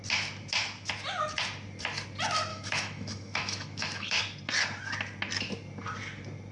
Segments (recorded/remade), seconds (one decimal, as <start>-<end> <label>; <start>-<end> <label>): 0.0-2.5 recorded; 2.5-4.2 remade; 4.2-6.5 recorded